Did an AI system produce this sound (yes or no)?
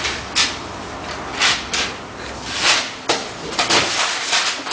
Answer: no